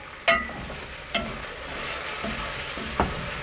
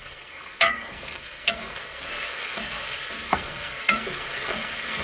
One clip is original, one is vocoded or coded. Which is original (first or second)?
first